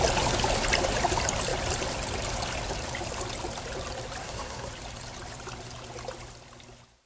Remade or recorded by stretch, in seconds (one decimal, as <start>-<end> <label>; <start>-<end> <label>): 0.0-4.2 recorded; 4.2-4.7 remade; 4.7-7.1 recorded